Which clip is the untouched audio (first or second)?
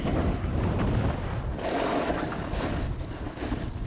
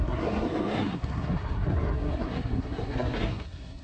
first